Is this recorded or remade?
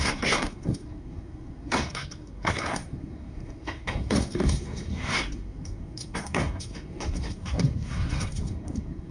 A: remade